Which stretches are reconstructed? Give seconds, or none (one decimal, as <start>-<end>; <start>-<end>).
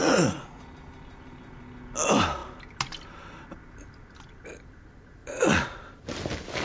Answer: 0.0-0.6; 5.2-5.8